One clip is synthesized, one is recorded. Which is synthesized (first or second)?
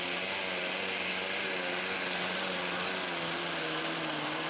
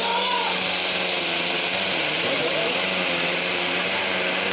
second